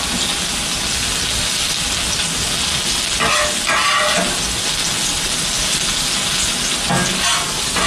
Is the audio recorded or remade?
recorded